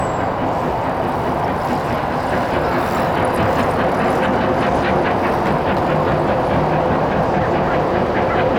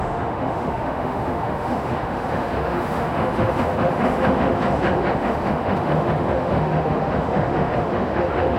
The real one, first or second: first